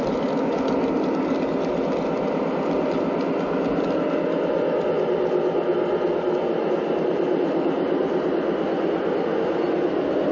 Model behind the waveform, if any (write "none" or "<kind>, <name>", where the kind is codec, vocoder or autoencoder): none